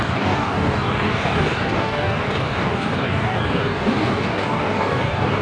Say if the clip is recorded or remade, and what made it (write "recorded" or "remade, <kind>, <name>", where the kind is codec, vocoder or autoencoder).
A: remade, codec, DAC